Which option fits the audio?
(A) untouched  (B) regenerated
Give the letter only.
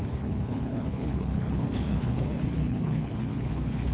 B